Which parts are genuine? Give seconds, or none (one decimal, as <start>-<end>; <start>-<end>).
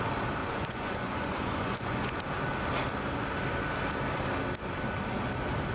0.0-0.4; 2.2-5.7